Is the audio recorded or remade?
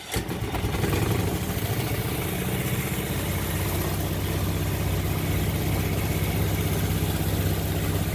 recorded